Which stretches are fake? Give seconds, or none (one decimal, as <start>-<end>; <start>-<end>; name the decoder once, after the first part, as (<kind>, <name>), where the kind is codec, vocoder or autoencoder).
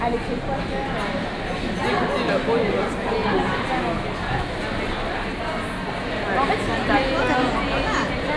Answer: none